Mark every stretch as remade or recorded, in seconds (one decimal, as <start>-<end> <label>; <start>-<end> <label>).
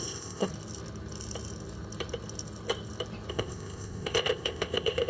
0.0-0.5 remade; 0.5-3.3 recorded; 3.3-5.1 remade